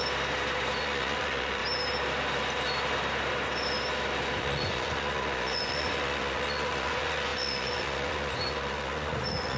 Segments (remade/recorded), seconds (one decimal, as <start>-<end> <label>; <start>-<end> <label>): 0.0-0.8 recorded; 0.8-1.6 remade; 1.6-4.4 recorded; 4.4-9.6 remade